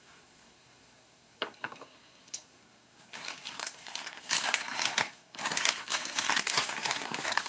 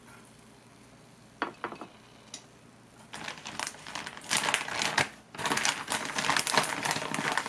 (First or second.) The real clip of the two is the second